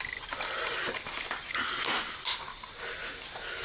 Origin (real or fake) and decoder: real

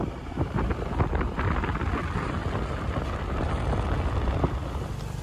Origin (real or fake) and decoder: real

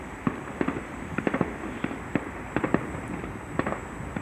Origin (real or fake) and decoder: real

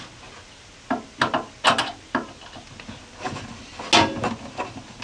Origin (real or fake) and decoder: real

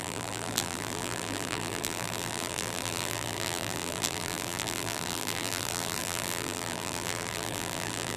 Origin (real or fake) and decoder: fake, vocoder, BigVGAN v2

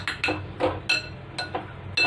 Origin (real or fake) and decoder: real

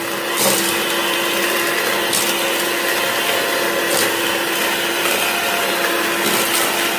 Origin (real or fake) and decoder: real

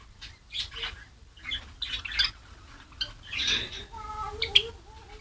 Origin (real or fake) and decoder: real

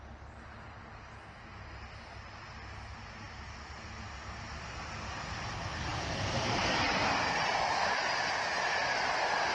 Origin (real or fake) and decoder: real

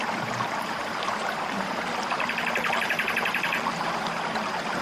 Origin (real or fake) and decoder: fake, vocoder, BigVGAN v2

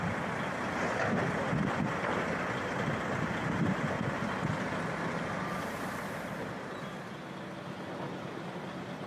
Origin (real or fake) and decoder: real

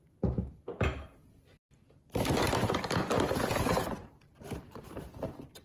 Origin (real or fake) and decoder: fake, vocoder, BigVGAN v2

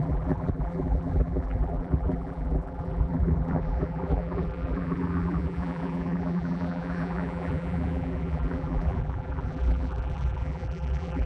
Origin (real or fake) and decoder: fake, vocoder, BigVGAN v2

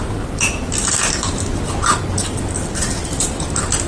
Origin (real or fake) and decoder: real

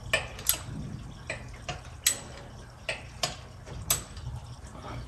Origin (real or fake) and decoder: real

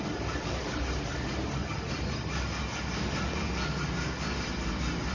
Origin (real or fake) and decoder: real